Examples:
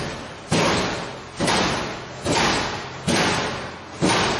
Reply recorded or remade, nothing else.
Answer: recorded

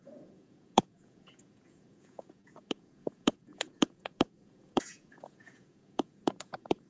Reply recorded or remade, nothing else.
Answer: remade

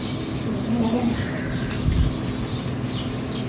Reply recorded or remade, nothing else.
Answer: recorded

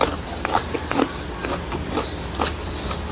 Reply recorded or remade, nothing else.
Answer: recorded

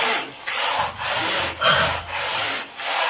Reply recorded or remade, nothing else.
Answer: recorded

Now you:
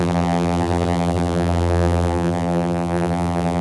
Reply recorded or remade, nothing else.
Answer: remade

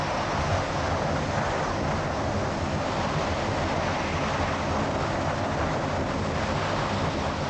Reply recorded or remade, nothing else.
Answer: recorded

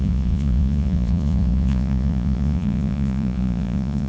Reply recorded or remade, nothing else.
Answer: remade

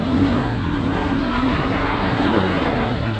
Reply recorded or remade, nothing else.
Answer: remade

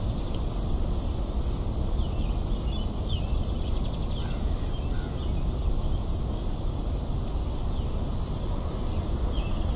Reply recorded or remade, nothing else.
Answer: recorded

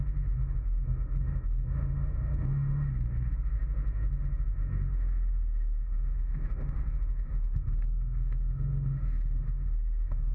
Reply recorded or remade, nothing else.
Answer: remade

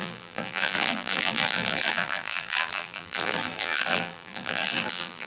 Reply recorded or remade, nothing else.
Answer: remade